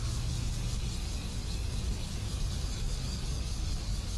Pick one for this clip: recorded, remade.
remade